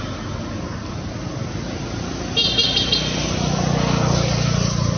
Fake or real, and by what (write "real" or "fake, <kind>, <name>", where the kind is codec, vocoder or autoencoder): real